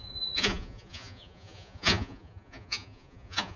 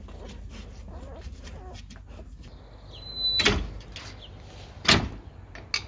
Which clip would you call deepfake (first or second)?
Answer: first